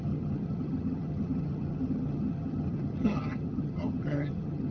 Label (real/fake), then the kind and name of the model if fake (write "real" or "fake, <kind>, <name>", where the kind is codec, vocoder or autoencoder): fake, vocoder, HiFi-GAN